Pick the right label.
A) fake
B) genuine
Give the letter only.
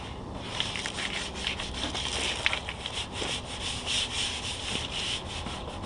B